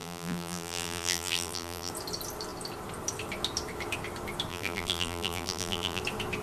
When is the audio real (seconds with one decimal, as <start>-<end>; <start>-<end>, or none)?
1.9-4.5; 6.0-6.4